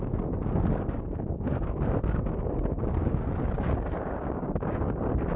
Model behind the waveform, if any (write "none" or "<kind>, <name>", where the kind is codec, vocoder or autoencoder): none